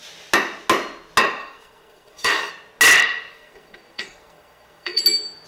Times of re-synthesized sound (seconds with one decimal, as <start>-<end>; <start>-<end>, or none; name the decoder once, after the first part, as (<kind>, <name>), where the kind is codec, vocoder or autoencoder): 1.4-2.5 (codec, SNAC); 3.3-5.0